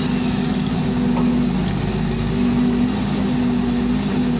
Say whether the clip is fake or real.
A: real